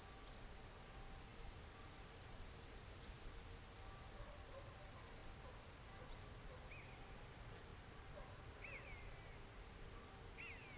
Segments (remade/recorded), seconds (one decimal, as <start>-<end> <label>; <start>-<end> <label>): 0.0-1.3 recorded; 1.3-3.1 remade; 3.1-7.7 recorded; 7.7-9.3 remade; 9.3-10.8 recorded